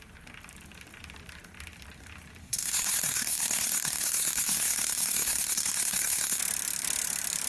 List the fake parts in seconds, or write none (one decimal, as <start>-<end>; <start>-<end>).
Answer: 2.4-6.4